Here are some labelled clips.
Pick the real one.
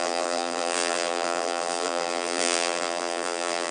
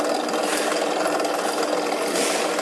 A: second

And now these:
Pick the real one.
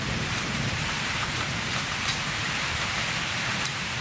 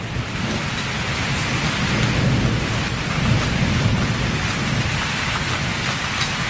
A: second